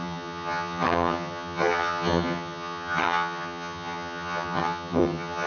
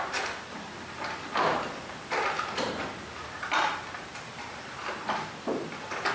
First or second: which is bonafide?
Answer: second